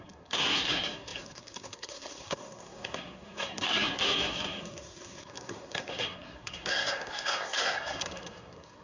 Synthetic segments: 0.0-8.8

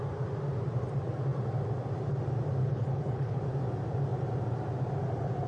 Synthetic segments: 2.6-3.4

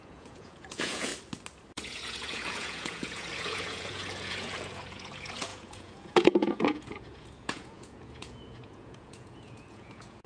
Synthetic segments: 0.0-1.1; 1.7-10.3

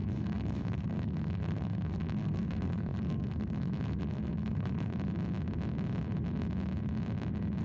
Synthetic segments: 0.0-4.9

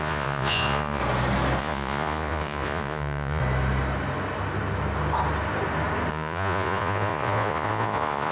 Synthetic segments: 0.0-1.0; 1.6-3.4; 6.1-8.3

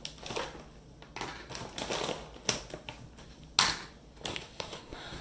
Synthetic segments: 4.3-5.2

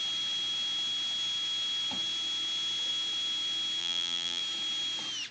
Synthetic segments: 3.8-4.4

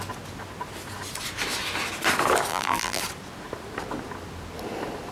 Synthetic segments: 2.5-3.0